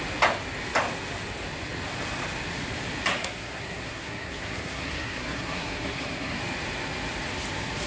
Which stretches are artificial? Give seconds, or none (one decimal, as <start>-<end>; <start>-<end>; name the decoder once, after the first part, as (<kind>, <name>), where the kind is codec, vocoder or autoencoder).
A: 3.2-6.4 (codec, SNAC)